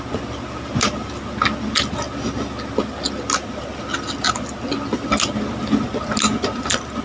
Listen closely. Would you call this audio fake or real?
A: real